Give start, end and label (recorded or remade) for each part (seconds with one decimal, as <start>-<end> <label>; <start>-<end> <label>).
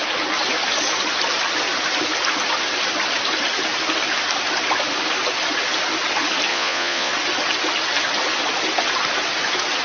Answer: 0.0-6.5 recorded; 6.5-7.1 remade; 7.1-9.8 recorded